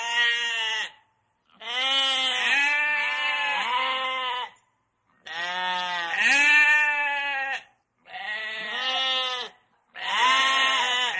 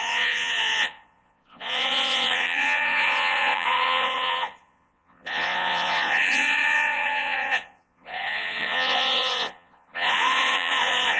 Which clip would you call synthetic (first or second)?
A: second